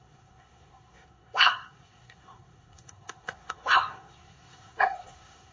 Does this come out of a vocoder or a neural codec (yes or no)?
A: yes